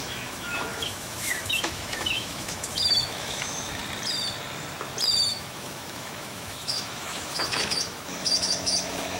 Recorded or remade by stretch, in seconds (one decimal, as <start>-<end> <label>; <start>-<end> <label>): 0.0-3.8 remade; 3.8-5.3 recorded; 5.3-9.2 remade